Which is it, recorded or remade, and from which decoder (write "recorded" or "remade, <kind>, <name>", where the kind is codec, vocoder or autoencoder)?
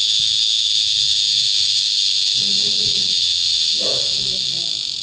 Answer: remade, autoencoder, DAC-VAE